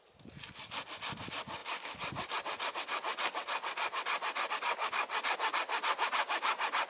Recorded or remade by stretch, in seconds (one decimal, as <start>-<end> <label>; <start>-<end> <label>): 0.0-1.6 recorded; 1.6-4.5 remade; 4.5-6.9 recorded